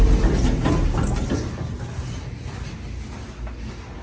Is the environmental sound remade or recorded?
recorded